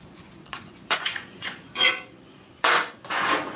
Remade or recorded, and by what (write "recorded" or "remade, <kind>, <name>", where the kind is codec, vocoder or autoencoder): remade, vocoder, Vocos